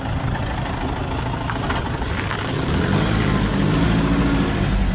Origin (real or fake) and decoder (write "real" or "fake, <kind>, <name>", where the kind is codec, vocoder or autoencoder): real